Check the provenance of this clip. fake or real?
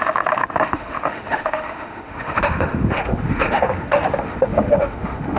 fake